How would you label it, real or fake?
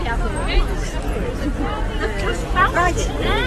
real